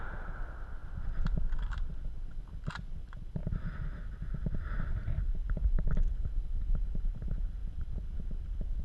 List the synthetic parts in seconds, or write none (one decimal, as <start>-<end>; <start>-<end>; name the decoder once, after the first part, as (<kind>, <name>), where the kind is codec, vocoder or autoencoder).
none